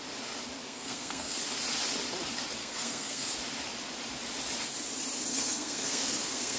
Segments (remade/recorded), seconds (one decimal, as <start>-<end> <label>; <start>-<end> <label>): 0.0-0.6 recorded; 0.6-1.4 remade; 1.4-2.6 recorded; 2.6-3.3 remade; 3.3-5.3 recorded; 5.3-6.6 remade